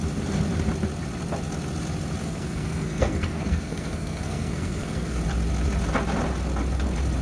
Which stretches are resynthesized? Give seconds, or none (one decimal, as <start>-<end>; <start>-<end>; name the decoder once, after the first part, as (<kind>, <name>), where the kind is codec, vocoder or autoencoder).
2.2-5.2 (codec, SNAC)